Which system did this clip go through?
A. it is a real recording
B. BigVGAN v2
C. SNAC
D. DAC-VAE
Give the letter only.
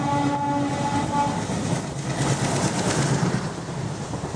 A